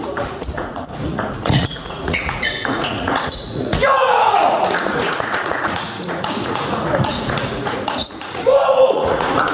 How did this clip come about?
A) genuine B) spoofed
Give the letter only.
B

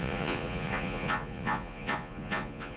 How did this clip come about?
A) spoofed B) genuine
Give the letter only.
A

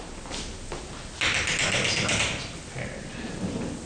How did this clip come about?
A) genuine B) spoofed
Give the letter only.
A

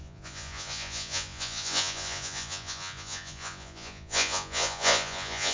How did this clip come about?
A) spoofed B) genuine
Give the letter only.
A